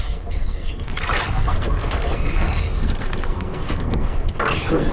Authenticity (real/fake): fake